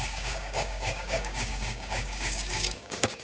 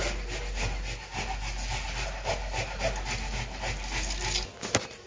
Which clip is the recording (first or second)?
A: second